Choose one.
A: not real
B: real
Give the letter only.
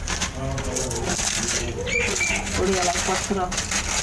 B